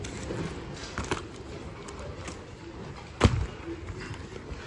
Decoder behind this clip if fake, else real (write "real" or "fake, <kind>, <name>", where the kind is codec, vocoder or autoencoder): real